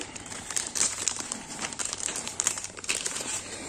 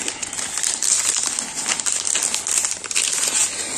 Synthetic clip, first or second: first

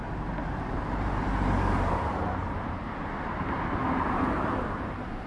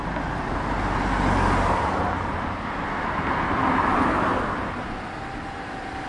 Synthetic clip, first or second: first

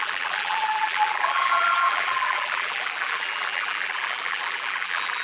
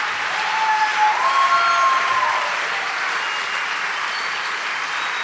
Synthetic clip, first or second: first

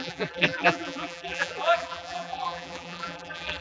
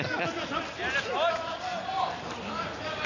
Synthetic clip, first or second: first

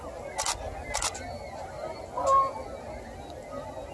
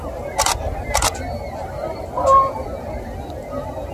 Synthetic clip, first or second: second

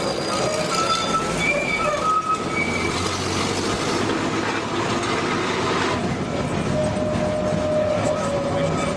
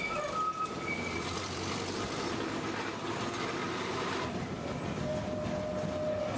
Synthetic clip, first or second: second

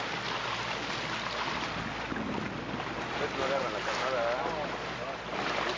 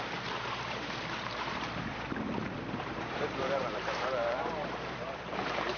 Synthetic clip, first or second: second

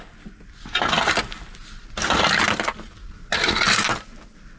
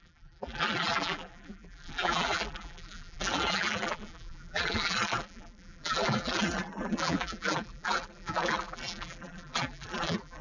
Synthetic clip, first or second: second